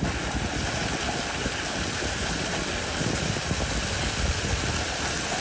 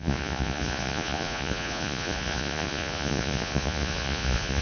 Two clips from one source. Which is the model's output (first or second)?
second